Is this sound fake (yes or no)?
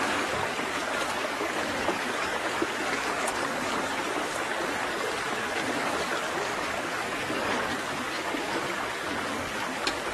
yes